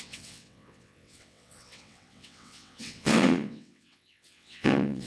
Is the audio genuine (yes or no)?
no